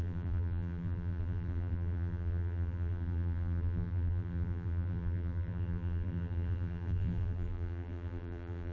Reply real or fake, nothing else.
fake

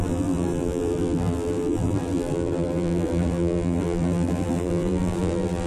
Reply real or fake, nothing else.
fake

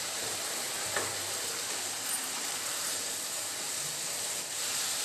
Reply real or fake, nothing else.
fake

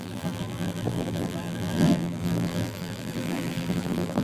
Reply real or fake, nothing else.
fake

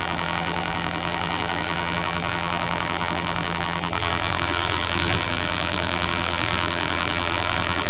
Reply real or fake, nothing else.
fake